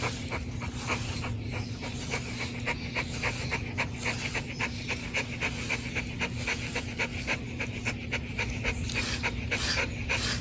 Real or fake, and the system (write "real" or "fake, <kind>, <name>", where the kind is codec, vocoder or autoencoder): real